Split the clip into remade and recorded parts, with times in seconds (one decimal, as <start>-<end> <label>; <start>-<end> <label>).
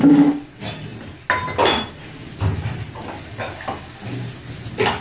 0.0-5.0 recorded